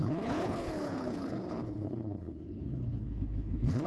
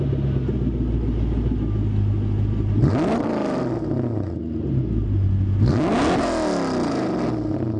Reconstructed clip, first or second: first